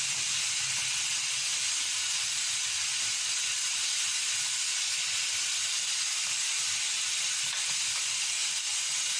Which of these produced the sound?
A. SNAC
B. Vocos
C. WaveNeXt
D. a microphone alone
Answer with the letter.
D